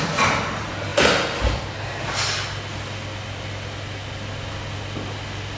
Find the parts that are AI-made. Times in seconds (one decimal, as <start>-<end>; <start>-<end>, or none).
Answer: none